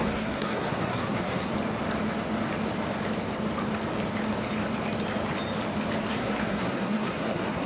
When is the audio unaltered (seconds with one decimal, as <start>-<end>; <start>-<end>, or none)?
1.5-6.1